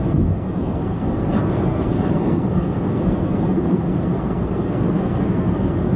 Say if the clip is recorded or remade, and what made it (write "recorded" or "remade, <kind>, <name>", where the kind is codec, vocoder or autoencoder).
remade, codec, SNAC